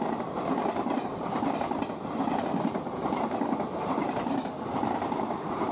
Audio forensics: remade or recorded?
remade